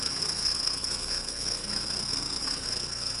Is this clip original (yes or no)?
no